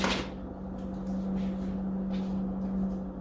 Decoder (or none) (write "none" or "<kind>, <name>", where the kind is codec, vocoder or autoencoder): none